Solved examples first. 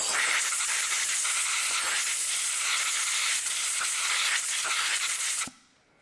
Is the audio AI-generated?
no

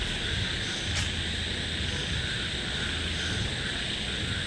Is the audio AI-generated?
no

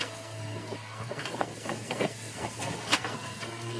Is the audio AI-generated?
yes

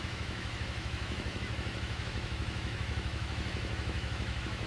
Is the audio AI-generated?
yes